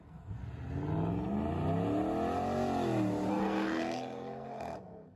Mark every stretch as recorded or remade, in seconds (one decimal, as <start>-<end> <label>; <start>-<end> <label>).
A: 0.0-0.4 remade; 0.4-3.3 recorded; 3.3-5.2 remade